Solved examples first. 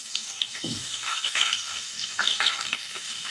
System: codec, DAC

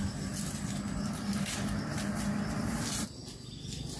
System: none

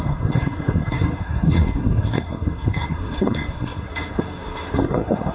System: codec, SNAC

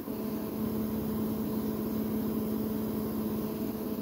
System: none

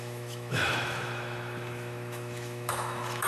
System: autoencoder, DAC-VAE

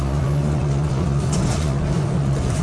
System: vocoder, Vocos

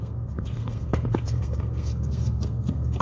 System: codec, SNAC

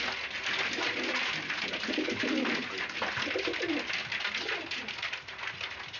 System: none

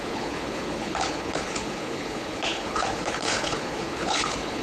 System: codec, HILCodec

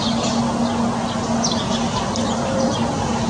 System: none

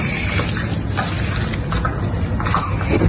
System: none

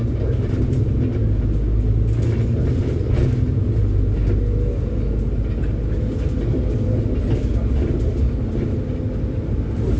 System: none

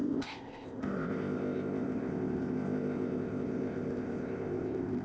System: codec, ZipCodec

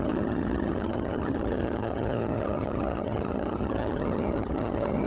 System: vocoder, HiFi-GAN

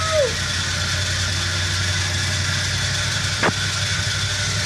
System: none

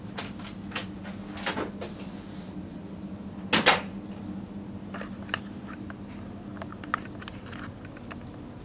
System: none